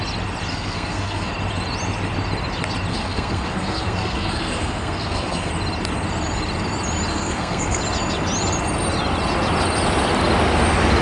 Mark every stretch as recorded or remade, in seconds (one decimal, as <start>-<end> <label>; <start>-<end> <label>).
0.0-0.5 recorded; 0.5-1.3 remade; 1.3-2.9 recorded; 2.9-5.5 remade; 5.5-7.1 recorded; 7.1-7.8 remade; 7.8-11.0 recorded